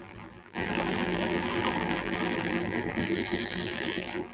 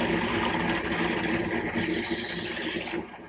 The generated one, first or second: first